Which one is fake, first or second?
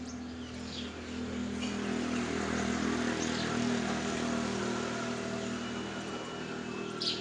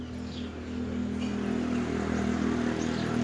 first